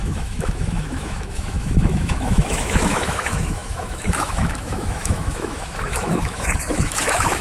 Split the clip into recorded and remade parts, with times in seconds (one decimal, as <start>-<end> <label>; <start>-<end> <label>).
0.0-7.4 remade